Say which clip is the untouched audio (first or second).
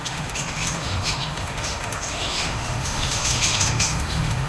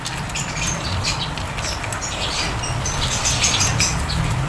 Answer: second